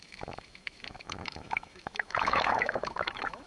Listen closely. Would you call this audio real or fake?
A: fake